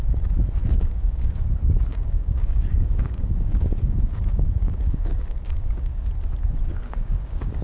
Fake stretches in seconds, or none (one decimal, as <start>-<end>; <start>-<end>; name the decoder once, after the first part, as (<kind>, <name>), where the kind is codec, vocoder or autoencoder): 0.6-1.4 (codec, DAC); 1.9-6.1; 6.7-7.6